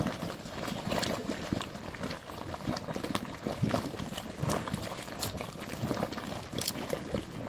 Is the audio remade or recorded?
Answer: recorded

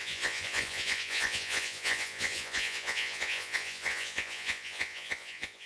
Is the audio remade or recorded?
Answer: remade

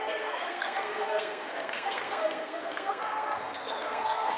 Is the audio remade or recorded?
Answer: remade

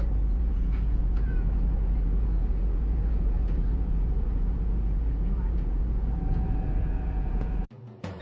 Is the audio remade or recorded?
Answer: remade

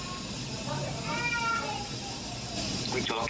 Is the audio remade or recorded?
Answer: recorded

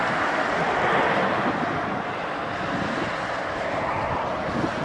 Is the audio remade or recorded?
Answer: recorded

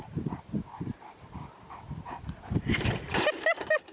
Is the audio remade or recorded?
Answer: recorded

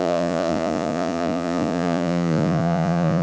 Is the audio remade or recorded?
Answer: remade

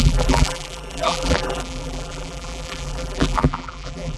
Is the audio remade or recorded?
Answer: remade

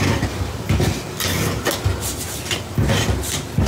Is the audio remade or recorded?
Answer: recorded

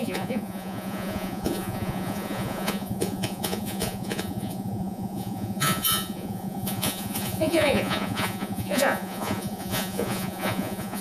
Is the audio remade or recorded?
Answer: remade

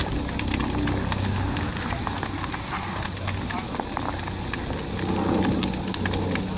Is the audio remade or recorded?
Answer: recorded